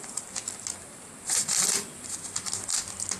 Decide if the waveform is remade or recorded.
recorded